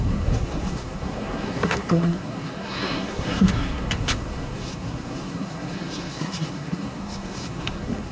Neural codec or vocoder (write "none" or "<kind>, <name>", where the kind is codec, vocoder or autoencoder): codec, SNAC